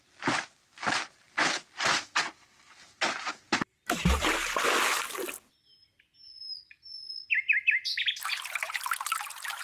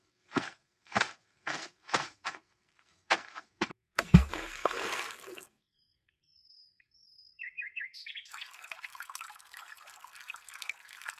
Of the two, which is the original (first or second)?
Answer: first